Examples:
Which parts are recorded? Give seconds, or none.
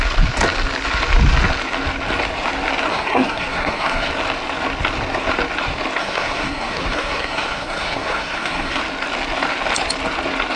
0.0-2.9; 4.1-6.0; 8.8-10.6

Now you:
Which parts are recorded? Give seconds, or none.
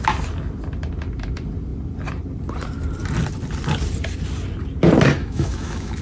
0.0-5.2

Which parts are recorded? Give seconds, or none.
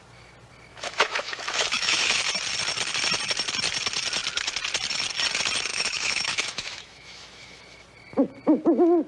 0.0-0.7; 2.2-5.7; 7.6-9.1